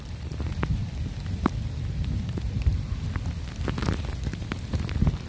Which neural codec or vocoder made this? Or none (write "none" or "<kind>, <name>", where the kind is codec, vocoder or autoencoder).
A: vocoder, BigVGAN v2